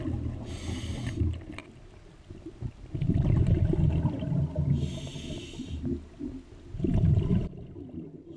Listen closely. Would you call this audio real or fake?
real